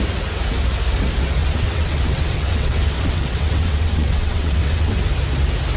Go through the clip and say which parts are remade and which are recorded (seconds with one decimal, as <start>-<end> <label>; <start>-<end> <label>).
0.0-1.4 recorded; 1.4-4.9 remade; 4.9-5.8 recorded